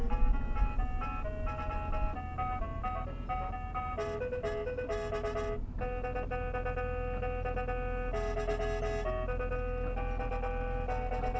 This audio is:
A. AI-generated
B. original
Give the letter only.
B